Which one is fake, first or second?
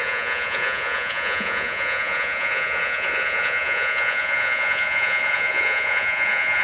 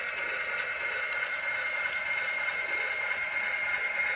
first